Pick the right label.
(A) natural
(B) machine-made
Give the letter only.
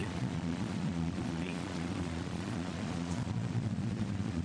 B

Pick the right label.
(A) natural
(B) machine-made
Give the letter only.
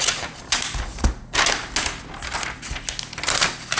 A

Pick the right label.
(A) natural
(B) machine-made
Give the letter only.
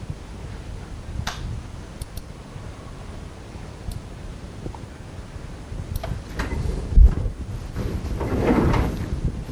A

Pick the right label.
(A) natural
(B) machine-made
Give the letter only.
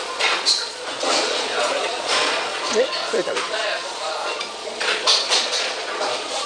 B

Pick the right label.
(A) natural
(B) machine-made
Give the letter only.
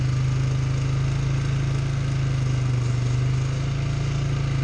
A